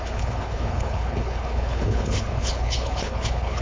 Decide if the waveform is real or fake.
fake